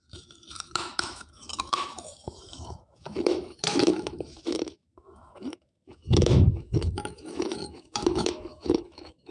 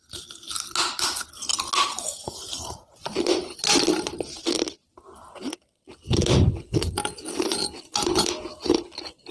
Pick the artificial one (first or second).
first